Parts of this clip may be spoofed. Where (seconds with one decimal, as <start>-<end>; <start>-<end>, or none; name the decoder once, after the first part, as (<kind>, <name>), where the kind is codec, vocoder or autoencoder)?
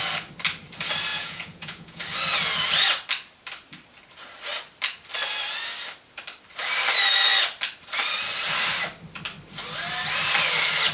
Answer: 1.1-2.0 (vocoder, Vocos)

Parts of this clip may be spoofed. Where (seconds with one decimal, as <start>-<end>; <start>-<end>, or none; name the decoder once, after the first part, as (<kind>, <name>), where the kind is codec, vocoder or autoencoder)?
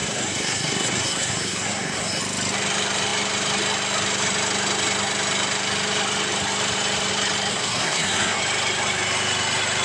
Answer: 0.0-2.2 (codec, SNAC); 7.5-8.4